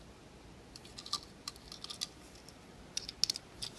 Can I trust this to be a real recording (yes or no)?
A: yes